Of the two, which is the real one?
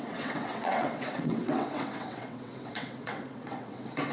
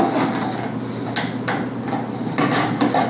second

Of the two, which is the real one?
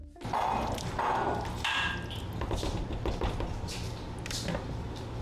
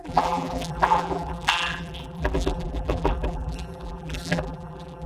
first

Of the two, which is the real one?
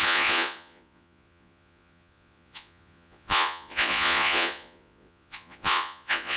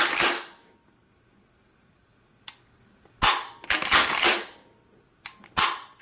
second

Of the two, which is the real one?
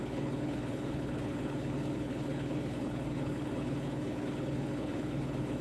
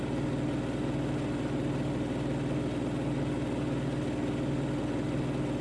second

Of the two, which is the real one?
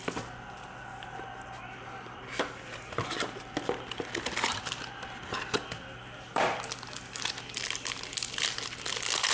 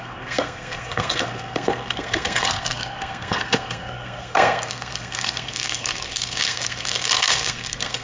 first